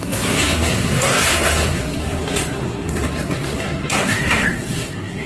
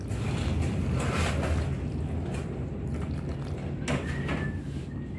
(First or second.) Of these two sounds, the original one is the second